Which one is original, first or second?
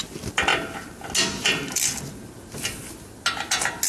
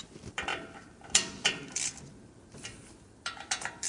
first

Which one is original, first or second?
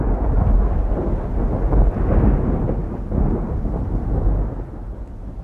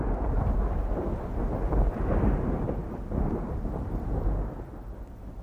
first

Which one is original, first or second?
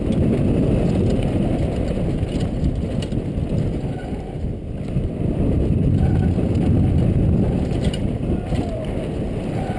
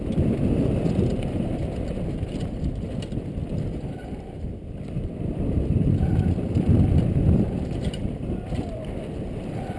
first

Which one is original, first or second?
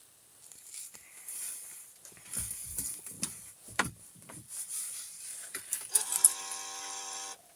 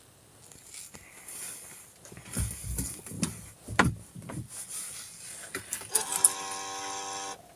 second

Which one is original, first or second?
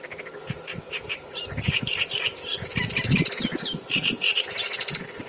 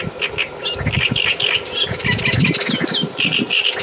second